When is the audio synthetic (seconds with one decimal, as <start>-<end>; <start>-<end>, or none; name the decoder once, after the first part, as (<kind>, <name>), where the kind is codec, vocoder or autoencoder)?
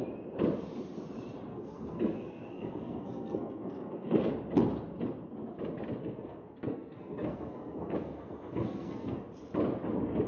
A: 1.5-4.3 (codec, SNAC); 6.0-9.2